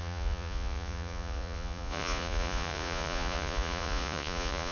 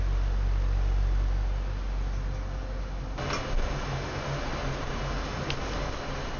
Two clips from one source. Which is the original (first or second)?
second